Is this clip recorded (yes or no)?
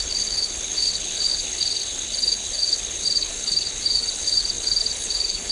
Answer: no